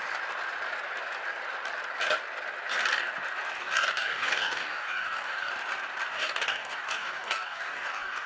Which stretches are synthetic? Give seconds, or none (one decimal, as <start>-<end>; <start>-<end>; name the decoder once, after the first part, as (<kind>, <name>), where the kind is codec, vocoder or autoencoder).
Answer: 3.6-5.5 (codec, DAC); 6.1-8.3